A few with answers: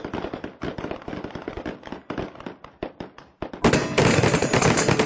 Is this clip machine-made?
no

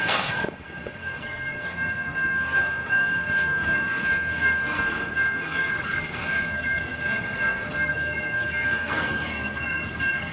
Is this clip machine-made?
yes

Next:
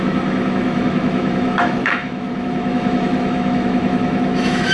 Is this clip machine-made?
yes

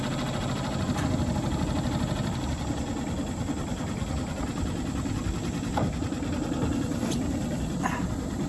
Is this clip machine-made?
no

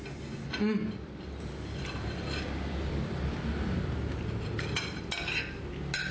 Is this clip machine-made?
no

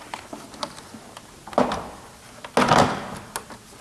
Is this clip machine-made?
no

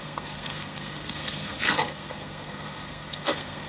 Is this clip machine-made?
yes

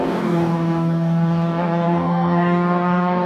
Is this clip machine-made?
yes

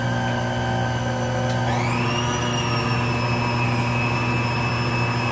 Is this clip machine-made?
no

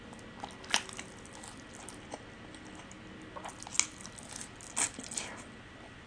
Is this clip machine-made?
no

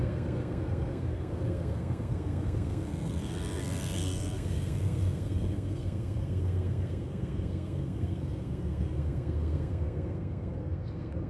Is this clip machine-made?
yes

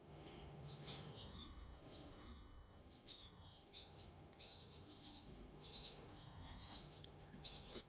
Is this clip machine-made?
yes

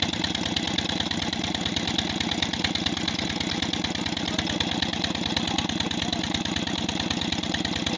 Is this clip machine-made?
no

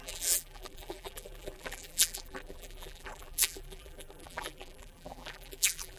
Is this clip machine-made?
yes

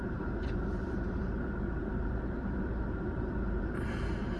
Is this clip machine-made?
yes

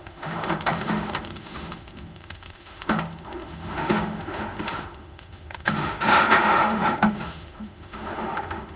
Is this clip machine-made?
yes